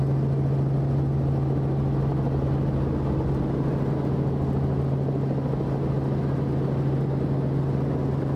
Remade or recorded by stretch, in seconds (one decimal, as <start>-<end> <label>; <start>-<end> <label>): 0.0-8.4 recorded